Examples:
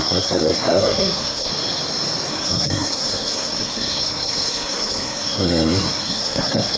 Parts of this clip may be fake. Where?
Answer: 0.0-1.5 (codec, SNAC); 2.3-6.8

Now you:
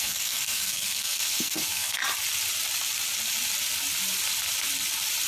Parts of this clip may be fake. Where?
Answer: 0.0-2.0 (codec, SNAC)

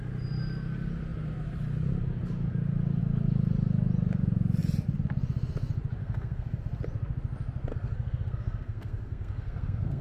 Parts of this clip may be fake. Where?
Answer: 6.0-6.6 (codec, SNAC); 7.7-10.0